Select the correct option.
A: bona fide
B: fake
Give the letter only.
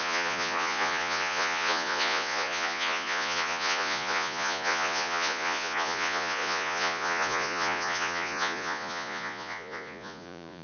B